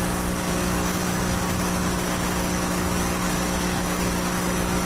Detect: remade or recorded remade